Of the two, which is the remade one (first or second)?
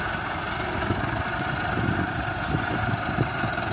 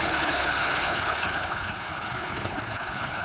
second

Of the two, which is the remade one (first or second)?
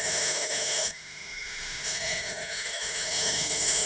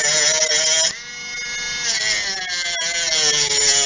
first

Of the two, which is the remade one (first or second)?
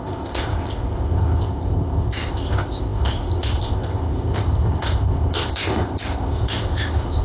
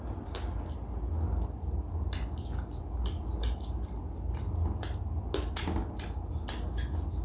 first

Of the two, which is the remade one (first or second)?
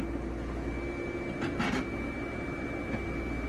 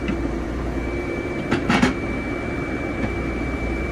second